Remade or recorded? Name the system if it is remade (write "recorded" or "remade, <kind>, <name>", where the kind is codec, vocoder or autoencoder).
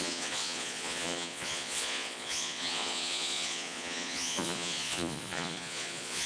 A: remade, vocoder, Vocos